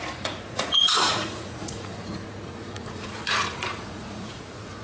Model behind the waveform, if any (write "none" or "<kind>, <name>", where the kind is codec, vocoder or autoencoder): vocoder, Vocos